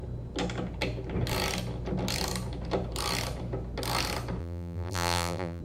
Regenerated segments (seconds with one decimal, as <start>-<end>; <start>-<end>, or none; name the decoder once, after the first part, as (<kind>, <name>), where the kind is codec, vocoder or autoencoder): 4.4-5.6 (vocoder, BigVGAN v2)